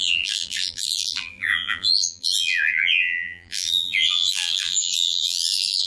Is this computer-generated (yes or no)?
yes